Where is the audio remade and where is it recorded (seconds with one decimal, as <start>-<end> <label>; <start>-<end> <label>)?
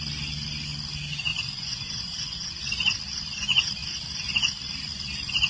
0.0-1.3 recorded; 1.3-2.6 remade; 2.6-5.5 recorded